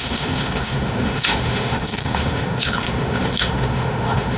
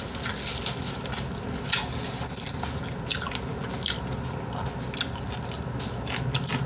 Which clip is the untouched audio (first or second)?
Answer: second